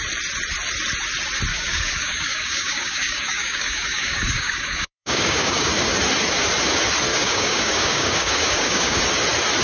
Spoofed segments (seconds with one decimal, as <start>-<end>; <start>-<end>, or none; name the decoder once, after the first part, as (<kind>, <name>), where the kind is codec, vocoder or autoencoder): 1.5-5.7 (codec, DAC); 7.1-9.0